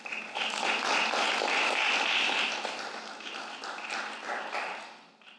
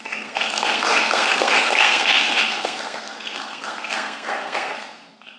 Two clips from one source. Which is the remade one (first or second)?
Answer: second